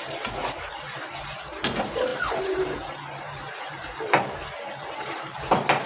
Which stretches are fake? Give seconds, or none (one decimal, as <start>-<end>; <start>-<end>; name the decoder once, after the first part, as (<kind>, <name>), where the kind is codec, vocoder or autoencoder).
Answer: none